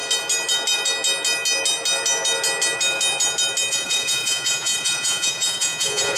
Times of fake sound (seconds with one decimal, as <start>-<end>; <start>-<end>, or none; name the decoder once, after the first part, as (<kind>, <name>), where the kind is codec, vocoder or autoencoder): 3.7-6.2 (vocoder, Vocos)